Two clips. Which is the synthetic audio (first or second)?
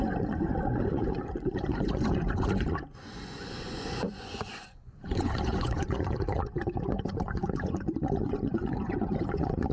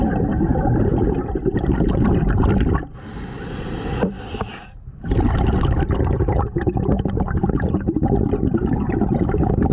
first